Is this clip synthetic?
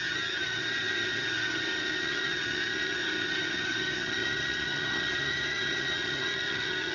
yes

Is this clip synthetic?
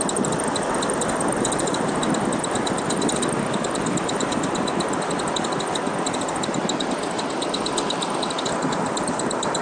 no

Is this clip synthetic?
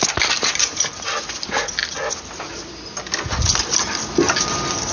no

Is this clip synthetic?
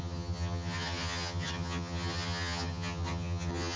yes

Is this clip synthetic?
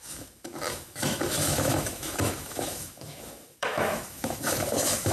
yes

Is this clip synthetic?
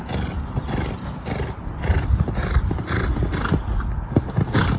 no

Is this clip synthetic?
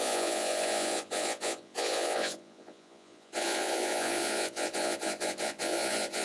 yes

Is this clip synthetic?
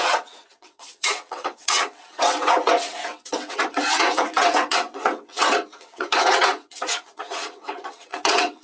yes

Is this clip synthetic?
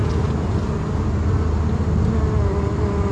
no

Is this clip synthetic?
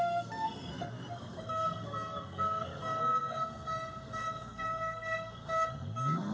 yes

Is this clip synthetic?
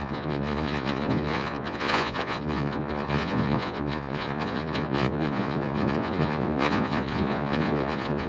yes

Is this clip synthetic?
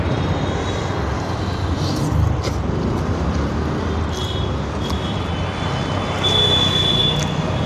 no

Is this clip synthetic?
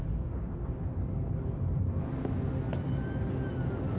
no